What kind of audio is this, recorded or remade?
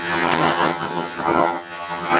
remade